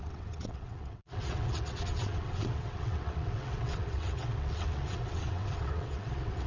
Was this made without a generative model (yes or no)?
no